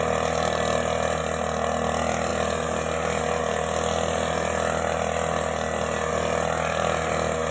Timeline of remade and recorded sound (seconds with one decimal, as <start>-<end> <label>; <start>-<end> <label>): 0.0-7.5 recorded